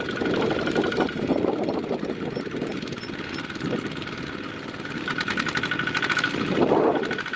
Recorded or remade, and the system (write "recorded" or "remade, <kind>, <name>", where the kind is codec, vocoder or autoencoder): recorded